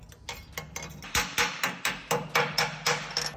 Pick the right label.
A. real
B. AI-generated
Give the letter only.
A